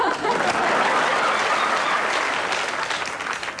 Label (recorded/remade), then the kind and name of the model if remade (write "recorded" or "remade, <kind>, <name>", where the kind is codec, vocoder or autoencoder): recorded